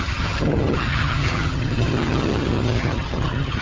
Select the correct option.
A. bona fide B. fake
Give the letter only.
B